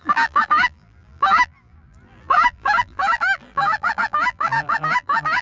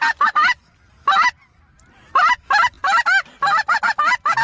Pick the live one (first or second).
second